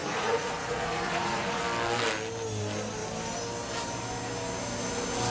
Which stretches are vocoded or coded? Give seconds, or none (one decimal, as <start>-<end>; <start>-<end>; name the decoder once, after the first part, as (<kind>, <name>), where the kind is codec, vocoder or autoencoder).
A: 0.0-1.6 (vocoder, Vocos)